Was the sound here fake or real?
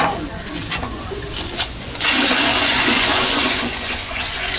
fake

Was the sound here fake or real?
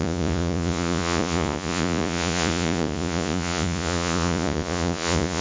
fake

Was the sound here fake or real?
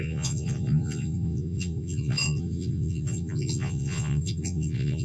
fake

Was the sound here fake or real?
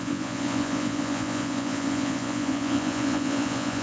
fake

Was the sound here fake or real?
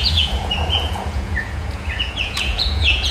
fake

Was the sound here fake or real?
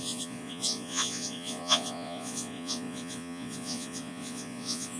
fake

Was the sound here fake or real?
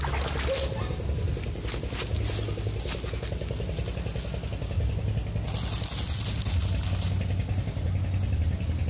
real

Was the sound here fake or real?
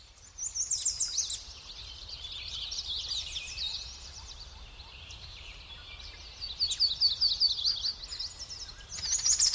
real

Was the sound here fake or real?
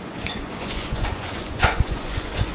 fake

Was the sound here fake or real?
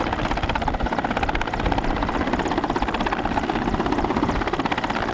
real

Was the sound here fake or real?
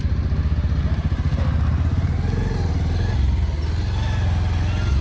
real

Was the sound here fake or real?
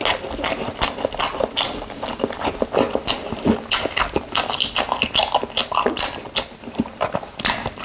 real